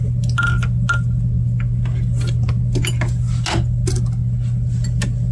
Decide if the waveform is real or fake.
real